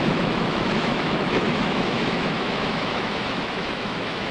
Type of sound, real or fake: fake